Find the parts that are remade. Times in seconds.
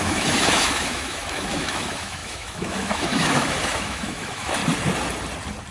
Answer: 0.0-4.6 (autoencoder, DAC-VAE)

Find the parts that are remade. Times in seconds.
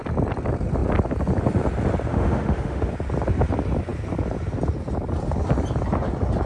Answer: 2.1-2.9 (autoencoder, DAC-VAE)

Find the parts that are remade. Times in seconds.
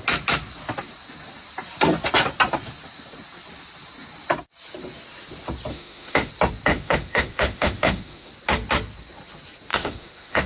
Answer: 5.7-6.3 (autoencoder, DAC-VAE); 6.7-8.3; 9.7-10.5